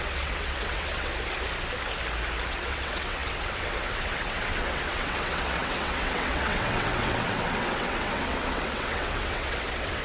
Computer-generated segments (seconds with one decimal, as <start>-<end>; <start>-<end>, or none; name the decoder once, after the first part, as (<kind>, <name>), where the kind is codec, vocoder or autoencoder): 0.0-1.1 (vocoder, WaveNeXt); 2.5-10.0